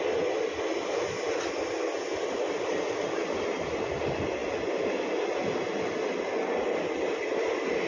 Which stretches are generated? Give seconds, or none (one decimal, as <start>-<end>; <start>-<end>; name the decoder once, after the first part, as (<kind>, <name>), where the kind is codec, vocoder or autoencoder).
none